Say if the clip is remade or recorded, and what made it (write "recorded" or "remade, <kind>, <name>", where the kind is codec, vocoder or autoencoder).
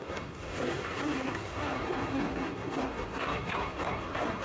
remade, codec, SNAC